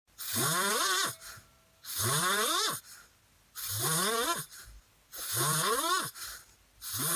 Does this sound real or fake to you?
real